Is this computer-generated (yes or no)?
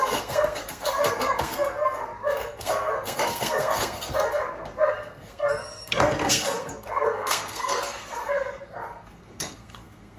yes